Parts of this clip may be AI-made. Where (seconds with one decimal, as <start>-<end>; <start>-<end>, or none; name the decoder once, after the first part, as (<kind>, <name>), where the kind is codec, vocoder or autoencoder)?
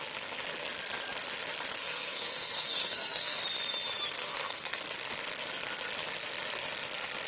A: 1.8-3.4 (codec, SNAC); 4.2-4.8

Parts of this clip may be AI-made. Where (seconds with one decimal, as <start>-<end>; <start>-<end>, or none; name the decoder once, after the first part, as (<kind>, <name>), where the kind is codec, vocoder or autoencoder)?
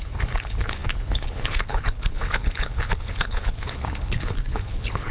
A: 0.0-5.1 (codec, HILCodec)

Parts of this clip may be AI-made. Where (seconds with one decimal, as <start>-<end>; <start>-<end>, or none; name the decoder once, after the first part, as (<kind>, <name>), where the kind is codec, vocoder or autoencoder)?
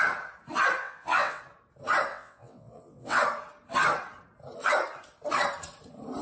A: 0.8-1.4 (vocoder, WaveNeXt); 2.1-3.2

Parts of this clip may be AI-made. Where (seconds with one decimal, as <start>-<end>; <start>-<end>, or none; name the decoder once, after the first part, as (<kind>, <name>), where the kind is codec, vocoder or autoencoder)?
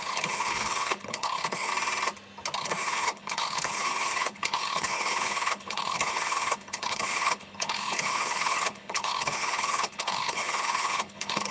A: 0.0-1.7 (codec, HILCodec); 2.6-11.5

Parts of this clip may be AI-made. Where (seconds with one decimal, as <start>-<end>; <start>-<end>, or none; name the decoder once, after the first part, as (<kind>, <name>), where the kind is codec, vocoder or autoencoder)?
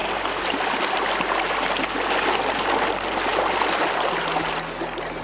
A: none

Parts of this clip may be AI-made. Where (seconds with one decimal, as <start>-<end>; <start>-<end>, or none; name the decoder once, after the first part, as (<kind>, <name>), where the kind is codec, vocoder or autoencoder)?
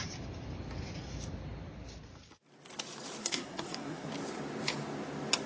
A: 3.2-4.1 (codec, SNAC)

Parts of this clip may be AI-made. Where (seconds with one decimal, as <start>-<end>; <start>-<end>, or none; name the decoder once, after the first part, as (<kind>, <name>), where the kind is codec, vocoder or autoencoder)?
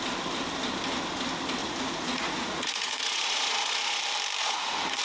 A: 1.6-4.0 (vocoder, Vocos); 4.4-5.0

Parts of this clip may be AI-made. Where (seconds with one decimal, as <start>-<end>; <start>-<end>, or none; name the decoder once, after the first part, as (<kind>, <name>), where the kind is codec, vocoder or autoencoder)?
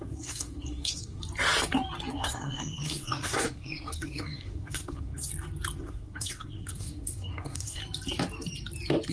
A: 0.0-1.2 (codec, SNAC); 2.1-5.3; 5.8-7.8